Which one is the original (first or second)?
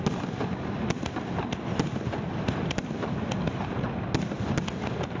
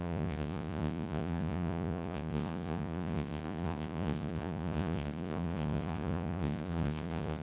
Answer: first